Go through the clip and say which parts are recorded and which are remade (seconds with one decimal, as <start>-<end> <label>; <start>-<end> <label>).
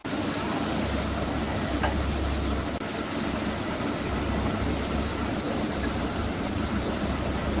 0.0-5.1 recorded; 5.1-6.9 remade; 6.9-7.6 recorded